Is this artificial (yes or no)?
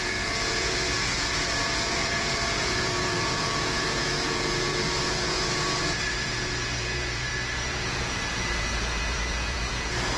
yes